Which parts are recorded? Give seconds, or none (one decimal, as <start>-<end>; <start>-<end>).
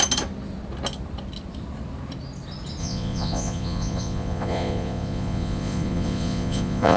0.0-2.8